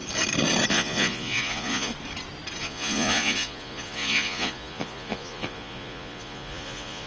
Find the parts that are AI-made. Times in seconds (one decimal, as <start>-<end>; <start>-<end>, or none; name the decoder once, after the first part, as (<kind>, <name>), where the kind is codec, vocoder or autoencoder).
0.7-1.9 (vocoder, Vocos); 2.6-7.1